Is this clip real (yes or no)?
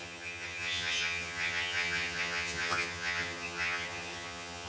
no